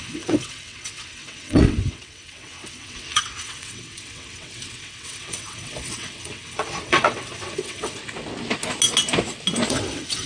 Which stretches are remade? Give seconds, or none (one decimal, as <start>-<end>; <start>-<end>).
0.0-8.0; 9.7-10.3